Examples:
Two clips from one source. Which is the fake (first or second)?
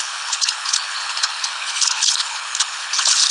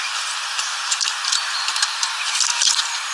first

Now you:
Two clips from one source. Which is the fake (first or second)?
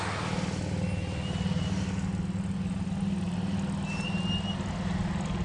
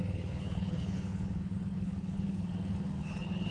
second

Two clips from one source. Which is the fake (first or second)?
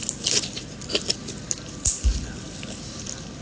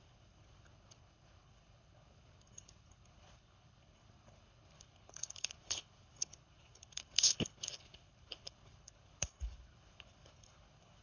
second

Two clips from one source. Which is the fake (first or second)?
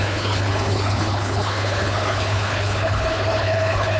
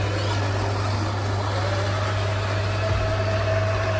first